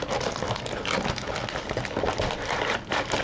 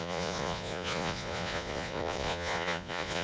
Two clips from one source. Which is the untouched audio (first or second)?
first